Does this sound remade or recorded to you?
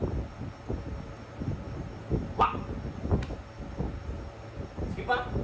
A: recorded